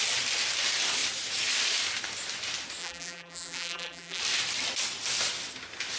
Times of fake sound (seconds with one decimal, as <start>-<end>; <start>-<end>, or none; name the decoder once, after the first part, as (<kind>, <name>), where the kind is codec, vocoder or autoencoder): 2.8-4.2 (vocoder, BigVGAN v2)